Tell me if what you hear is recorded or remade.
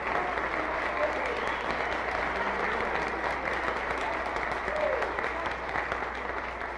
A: recorded